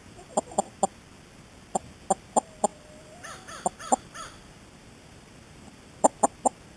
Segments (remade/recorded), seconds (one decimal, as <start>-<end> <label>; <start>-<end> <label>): 0.0-2.7 recorded; 2.7-6.8 remade

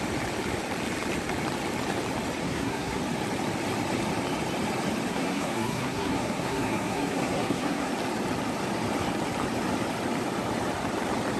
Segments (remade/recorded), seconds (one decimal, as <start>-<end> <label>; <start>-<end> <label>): 0.0-2.4 recorded; 2.4-3.0 remade; 3.0-5.1 recorded; 5.1-7.9 remade; 7.9-11.4 recorded

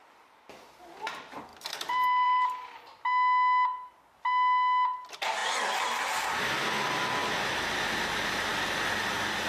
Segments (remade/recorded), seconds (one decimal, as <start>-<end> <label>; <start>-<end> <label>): 0.0-1.5 recorded; 1.5-2.4 remade; 2.4-7.2 recorded; 7.2-7.8 remade; 7.8-9.5 recorded

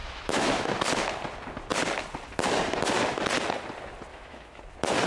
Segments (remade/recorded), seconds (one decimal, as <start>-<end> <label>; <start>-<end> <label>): 0.0-0.7 remade; 0.7-4.1 recorded; 4.1-4.6 remade; 4.6-5.1 recorded

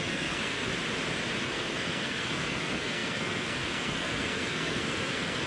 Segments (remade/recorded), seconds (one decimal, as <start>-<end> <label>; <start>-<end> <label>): 0.0-0.7 remade; 0.7-1.4 recorded; 1.4-5.5 remade